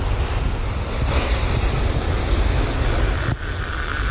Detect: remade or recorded recorded